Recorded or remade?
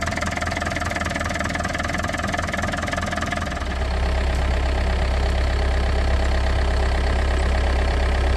recorded